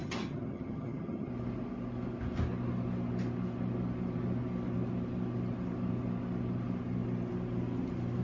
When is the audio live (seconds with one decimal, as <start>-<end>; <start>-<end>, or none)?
1.3-8.2